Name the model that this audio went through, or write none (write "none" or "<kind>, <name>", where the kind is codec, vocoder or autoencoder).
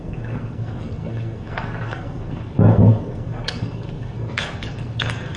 codec, SNAC